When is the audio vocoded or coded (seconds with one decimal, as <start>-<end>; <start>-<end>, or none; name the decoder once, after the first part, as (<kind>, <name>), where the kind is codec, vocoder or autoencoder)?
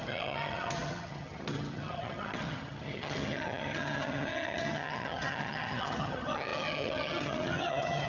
0.0-8.1 (vocoder, HiFi-GAN)